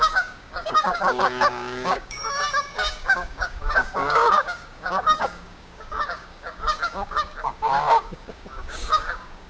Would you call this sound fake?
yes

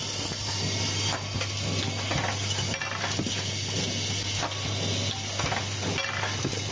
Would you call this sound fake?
no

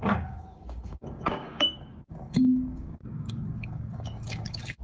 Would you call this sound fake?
yes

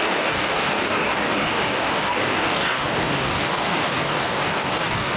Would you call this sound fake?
yes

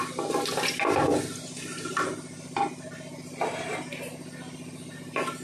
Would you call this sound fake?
no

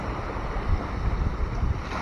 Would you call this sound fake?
no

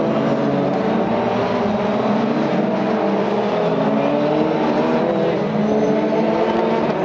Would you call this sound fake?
no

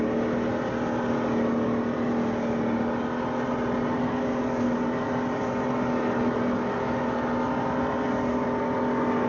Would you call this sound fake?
no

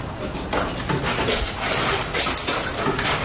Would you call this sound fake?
no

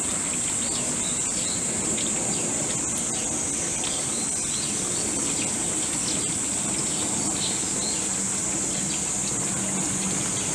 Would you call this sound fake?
no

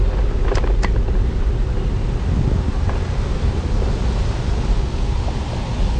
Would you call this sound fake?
no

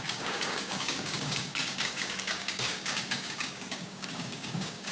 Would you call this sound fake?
yes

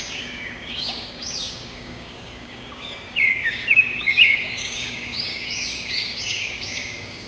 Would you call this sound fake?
yes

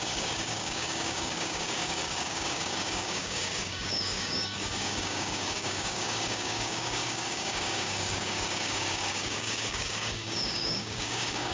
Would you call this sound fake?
yes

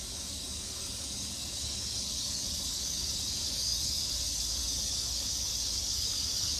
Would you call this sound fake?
yes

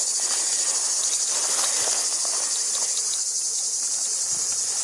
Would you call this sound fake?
no